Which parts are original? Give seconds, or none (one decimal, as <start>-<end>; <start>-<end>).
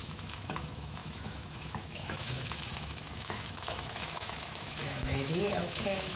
none